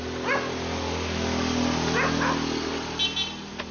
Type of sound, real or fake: real